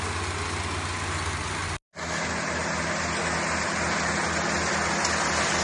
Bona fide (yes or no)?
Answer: yes